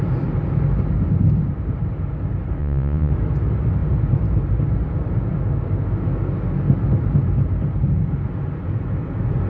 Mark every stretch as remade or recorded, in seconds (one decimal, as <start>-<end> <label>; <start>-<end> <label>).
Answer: 0.0-2.6 recorded; 2.6-3.1 remade; 3.1-9.5 recorded

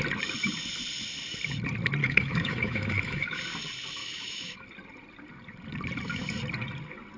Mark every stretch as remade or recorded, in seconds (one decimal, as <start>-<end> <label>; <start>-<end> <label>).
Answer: 0.0-2.0 recorded; 2.0-3.4 remade; 3.4-4.0 recorded; 4.0-4.6 remade; 4.6-7.2 recorded

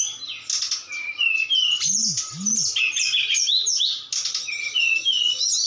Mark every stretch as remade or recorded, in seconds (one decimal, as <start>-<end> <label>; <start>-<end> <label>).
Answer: 0.0-5.7 recorded

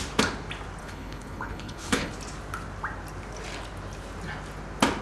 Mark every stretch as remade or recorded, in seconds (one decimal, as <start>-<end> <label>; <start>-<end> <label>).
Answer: 0.0-0.8 recorded; 0.8-2.1 remade; 2.1-5.0 recorded

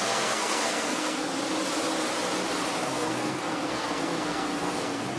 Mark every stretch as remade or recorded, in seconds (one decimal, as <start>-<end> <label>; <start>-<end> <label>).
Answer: 0.0-1.3 remade; 1.3-2.8 recorded; 2.8-5.2 remade